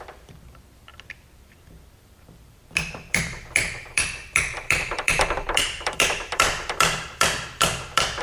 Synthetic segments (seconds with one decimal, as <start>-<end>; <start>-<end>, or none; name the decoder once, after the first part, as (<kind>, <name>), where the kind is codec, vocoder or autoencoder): 0.0-8.2 (vocoder, BigVGAN v2)